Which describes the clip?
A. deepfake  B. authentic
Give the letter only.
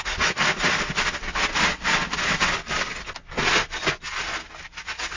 B